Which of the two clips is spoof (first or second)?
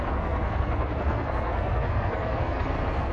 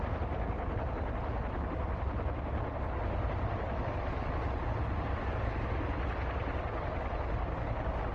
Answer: first